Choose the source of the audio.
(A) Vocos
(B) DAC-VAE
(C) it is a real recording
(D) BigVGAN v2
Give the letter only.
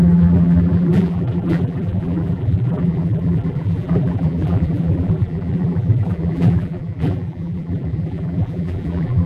D